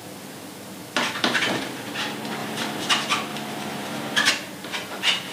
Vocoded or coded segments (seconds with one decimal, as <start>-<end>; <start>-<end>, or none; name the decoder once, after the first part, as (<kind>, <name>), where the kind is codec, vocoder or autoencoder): 0.8-1.6 (vocoder, BigVGAN v2); 2.4-2.9; 3.3-4.3